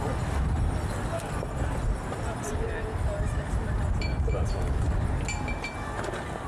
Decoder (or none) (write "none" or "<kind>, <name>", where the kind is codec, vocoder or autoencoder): none